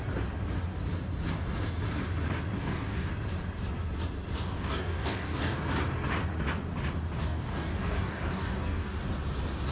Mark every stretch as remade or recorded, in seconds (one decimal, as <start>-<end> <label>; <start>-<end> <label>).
0.0-2.6 recorded; 2.6-3.1 remade; 3.1-4.4 recorded; 4.4-5.6 remade; 5.6-7.2 recorded; 7.2-9.0 remade; 9.0-9.7 recorded